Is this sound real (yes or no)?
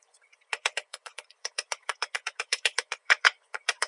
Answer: no